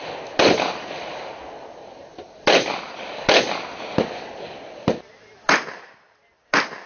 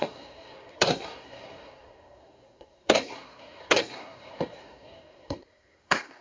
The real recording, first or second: first